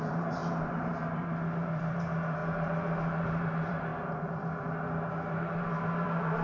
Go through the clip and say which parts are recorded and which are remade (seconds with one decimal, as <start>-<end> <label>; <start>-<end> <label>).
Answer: 0.0-3.9 remade; 3.9-5.3 recorded; 5.3-6.4 remade

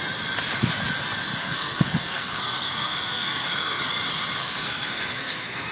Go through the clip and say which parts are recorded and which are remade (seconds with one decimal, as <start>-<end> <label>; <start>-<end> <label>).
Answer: 0.0-1.4 recorded; 1.4-3.8 remade; 3.8-4.4 recorded; 4.4-5.7 remade

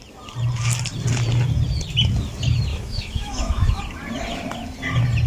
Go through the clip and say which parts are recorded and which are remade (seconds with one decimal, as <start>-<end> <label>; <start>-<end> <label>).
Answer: 0.0-2.7 recorded; 2.7-3.8 remade; 3.8-5.3 recorded